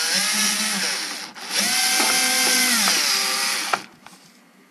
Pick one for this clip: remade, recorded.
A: recorded